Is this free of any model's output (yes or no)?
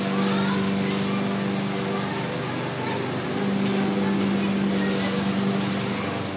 yes